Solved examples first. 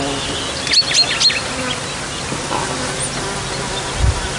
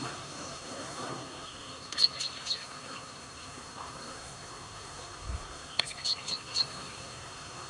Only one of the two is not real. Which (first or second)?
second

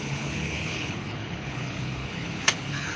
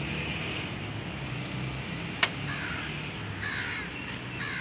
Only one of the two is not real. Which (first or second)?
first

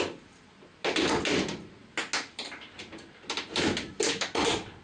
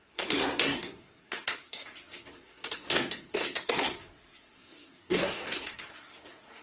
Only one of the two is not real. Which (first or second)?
second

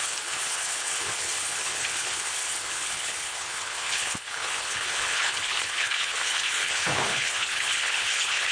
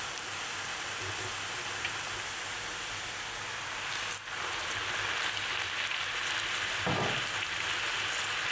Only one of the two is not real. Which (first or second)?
first